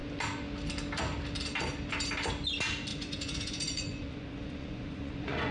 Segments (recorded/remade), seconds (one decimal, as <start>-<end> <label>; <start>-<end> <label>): 0.0-2.9 recorded; 2.9-5.5 remade